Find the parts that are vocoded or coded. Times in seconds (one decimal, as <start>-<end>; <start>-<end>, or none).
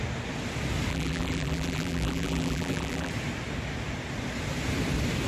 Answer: 0.9-3.1